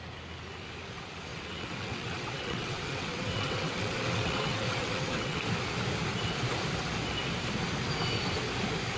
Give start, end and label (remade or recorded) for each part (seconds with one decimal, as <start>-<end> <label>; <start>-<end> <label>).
0.0-1.3 recorded; 1.3-5.4 remade; 5.4-9.0 recorded